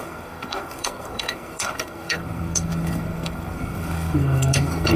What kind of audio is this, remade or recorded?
remade